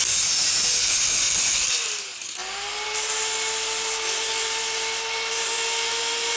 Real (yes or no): yes